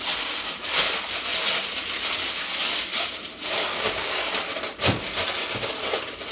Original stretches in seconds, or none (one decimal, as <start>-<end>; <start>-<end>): 0.0-3.7; 4.4-6.3